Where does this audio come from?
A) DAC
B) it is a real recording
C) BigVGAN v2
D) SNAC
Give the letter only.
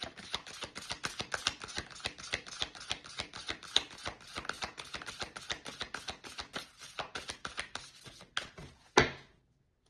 B